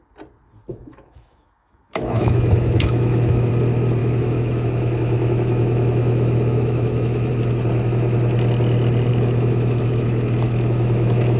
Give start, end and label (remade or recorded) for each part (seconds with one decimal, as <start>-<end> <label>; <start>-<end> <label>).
0.0-0.7 recorded; 0.7-3.5 remade; 3.5-4.0 recorded; 4.0-7.3 remade; 7.3-9.1 recorded; 9.1-11.4 remade